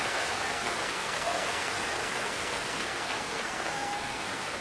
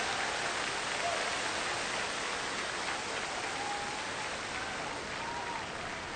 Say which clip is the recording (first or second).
second